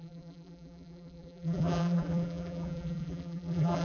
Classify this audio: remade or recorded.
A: remade